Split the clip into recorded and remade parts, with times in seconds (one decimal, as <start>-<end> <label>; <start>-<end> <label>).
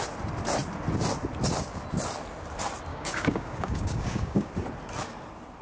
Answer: 0.0-2.9 recorded; 2.9-4.5 remade; 4.5-5.6 recorded